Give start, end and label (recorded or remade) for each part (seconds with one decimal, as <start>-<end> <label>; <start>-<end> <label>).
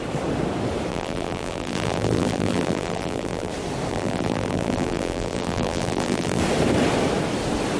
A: 0.0-0.9 recorded; 0.9-3.5 remade; 3.5-3.9 recorded; 3.9-6.4 remade; 6.4-7.8 recorded